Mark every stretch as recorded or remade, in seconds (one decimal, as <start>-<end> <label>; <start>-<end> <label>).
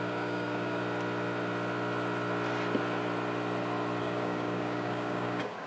0.0-0.8 remade; 0.8-4.0 recorded; 4.0-5.7 remade